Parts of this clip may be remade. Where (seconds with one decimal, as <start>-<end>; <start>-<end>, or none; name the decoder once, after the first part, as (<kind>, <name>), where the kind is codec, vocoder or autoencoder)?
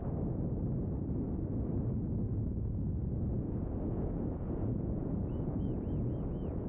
2.3-6.7 (vocoder, Vocos)